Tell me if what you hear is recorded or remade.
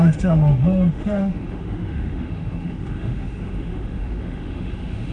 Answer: remade